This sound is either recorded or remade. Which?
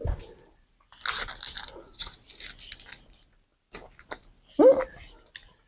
recorded